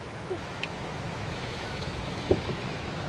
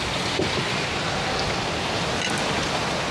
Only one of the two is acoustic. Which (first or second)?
second